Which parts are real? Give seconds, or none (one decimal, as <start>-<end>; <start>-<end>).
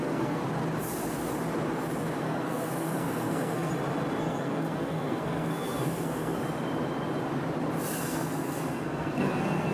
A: 0.4-2.2; 3.7-4.2; 6.4-8.0